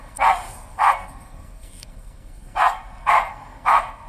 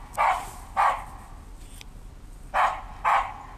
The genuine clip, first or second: second